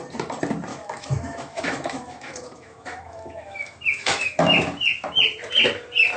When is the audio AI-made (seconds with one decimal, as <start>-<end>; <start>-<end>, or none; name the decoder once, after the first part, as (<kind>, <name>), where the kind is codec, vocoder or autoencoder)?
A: 0.7-4.4 (autoencoder, DAC-VAE)